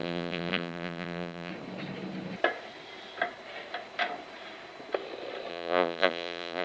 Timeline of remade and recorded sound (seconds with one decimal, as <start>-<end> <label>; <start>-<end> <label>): 0.0-1.5 remade; 1.5-5.5 recorded; 5.5-6.6 remade